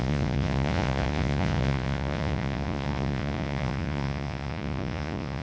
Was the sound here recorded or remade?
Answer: remade